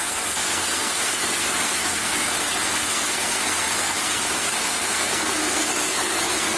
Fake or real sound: fake